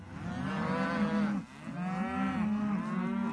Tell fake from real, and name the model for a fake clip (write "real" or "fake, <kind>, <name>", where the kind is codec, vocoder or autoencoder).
real